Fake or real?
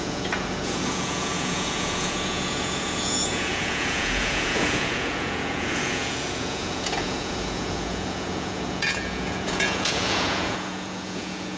fake